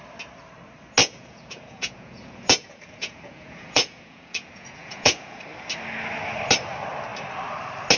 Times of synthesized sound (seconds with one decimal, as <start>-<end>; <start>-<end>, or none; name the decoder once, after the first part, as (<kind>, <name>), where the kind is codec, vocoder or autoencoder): 1.0-5.4 (vocoder, Vocos)